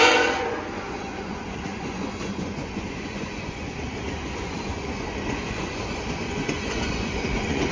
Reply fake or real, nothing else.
fake